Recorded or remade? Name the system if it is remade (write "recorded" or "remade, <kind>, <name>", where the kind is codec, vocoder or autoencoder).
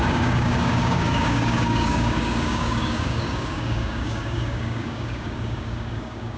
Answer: remade, codec, DAC